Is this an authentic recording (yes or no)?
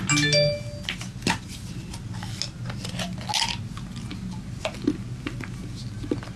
yes